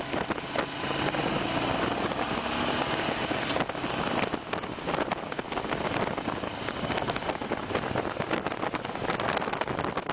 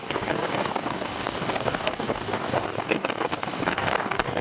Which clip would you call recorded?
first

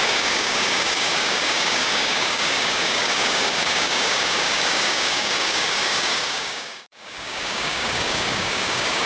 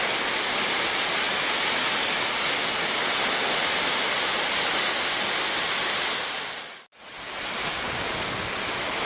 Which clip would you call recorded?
second